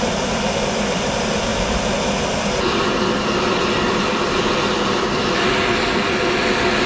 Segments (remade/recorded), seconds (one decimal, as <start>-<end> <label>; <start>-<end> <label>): 0.0-6.9 recorded